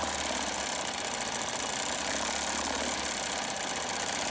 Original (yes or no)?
yes